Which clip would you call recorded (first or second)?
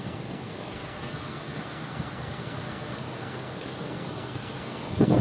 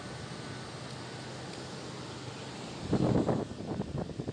second